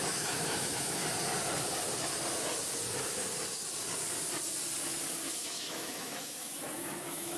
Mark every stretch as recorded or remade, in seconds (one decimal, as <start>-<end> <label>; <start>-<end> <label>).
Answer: 0.0-1.0 remade; 1.0-5.4 recorded; 5.4-7.4 remade